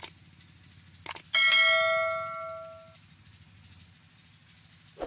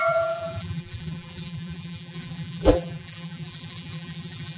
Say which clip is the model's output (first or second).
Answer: second